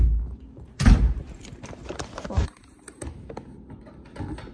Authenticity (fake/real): fake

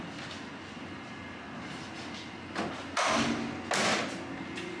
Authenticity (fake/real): real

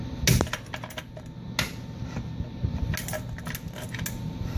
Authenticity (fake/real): real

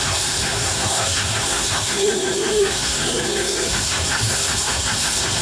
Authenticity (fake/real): fake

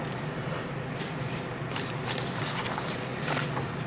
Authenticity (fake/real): fake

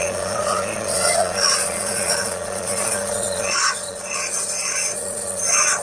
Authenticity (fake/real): fake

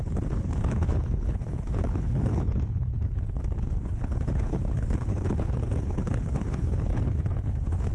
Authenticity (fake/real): fake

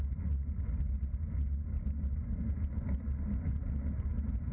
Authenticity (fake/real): real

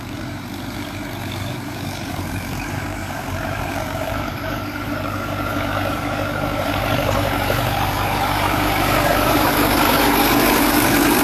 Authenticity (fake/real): fake